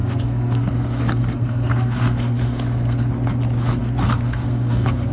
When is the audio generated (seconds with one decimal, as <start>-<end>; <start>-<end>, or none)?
0.0-3.1; 3.8-5.1